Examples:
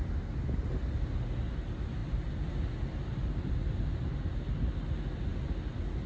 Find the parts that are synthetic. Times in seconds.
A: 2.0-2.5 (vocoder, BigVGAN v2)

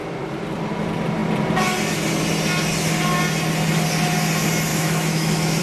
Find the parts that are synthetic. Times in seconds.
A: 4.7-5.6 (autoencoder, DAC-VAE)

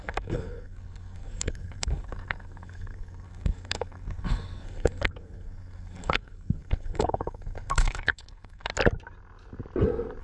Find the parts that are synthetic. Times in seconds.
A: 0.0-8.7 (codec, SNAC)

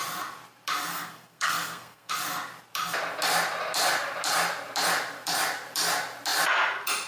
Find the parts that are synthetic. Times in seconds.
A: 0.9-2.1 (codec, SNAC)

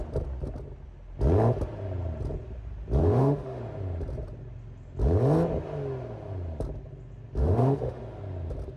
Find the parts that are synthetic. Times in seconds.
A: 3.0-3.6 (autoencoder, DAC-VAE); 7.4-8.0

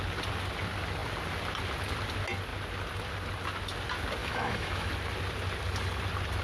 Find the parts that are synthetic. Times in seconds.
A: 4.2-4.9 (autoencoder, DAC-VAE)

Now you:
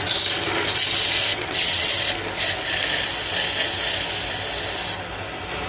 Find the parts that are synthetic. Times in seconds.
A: 1.3-2.0 (vocoder, WaveNeXt)

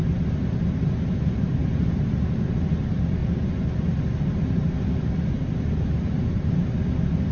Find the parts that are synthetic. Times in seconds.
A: 1.1-1.6 (vocoder, BigVGAN v2); 2.5-3.2; 4.7-7.3